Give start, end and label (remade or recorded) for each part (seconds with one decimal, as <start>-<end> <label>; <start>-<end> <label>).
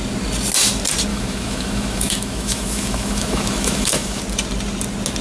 0.0-1.1 recorded; 1.1-4.2 remade; 4.2-5.2 recorded